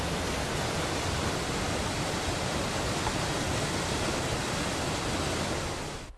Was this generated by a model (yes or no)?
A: no